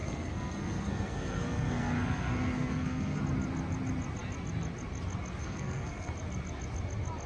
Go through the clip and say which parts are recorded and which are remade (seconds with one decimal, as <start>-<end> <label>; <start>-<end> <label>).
0.0-3.2 remade; 3.2-5.4 recorded; 5.4-6.1 remade; 6.1-7.3 recorded